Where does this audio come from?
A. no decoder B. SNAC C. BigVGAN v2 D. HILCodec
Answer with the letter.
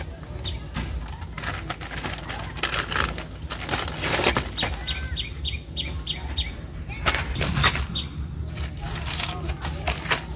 A